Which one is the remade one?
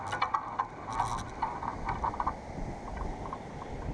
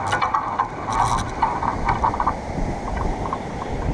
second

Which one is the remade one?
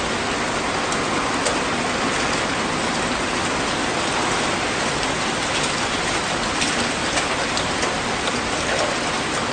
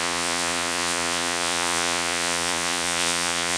second